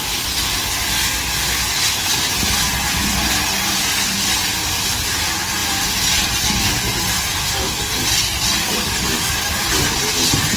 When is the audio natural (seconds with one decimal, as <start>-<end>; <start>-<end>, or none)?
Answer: 0.0-8.6; 9.3-10.6